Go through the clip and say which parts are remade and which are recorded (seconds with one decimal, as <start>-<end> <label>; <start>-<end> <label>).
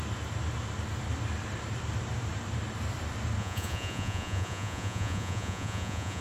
0.0-3.4 recorded; 3.4-6.2 remade